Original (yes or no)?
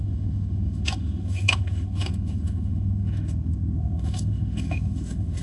no